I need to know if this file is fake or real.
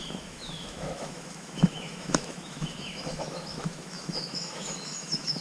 fake